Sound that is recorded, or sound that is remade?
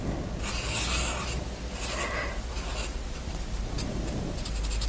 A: recorded